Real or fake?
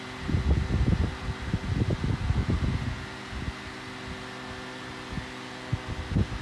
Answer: real